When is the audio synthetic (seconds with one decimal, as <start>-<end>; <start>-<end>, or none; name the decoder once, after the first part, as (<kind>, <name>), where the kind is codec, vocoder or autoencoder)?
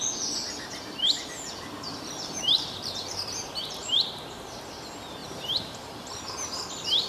1.9-4.6 (vocoder, BigVGAN v2); 5.2-6.2